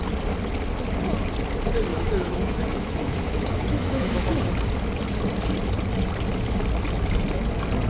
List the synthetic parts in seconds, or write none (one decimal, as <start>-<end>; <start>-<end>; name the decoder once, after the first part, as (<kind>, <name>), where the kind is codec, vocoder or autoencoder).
1.9-4.4 (autoencoder, DAC-VAE)